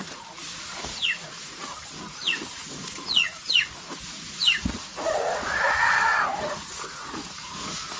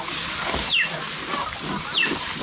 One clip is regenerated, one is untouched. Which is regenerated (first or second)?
first